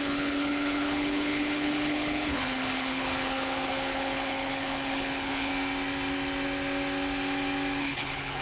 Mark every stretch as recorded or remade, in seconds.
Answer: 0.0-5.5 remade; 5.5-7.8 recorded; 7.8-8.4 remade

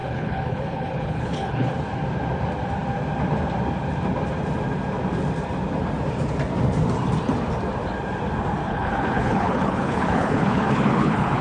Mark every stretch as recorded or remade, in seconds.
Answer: 0.0-1.7 remade; 1.7-8.6 recorded; 8.6-11.4 remade

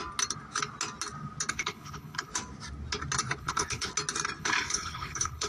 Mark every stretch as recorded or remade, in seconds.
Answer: 0.0-1.5 recorded; 1.5-2.3 remade; 2.3-3.4 recorded; 3.4-3.9 remade; 3.9-4.4 recorded; 4.4-5.5 remade

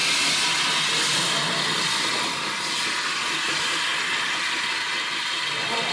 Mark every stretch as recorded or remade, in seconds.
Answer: 0.0-5.9 recorded

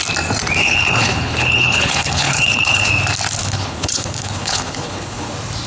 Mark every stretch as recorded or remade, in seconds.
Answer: 0.0-0.6 recorded; 0.6-2.9 remade; 2.9-3.4 recorded; 3.4-5.3 remade; 5.3-5.7 recorded

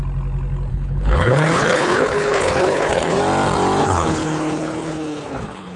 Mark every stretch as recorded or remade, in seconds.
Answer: 0.0-0.7 recorded; 0.7-3.2 remade; 3.2-3.8 recorded; 3.8-5.8 remade